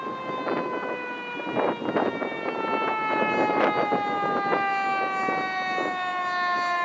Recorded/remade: recorded